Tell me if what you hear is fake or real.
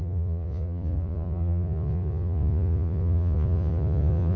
fake